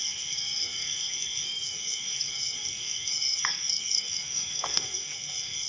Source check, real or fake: fake